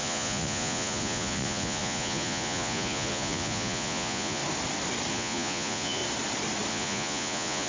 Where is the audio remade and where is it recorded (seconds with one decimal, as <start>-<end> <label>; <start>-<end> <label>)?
0.0-4.4 remade; 4.4-5.1 recorded; 5.1-6.0 remade; 6.0-6.7 recorded; 6.7-7.7 remade